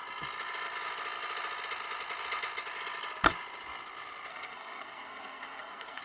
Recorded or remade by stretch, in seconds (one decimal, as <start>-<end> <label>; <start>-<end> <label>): 0.0-4.3 recorded; 4.3-6.0 remade